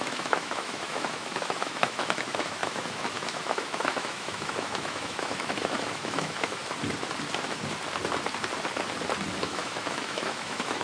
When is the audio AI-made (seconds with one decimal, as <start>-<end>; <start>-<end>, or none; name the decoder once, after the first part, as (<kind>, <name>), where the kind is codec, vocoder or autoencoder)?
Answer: 0.0-6.6 (autoencoder, DAC-VAE); 9.4-10.8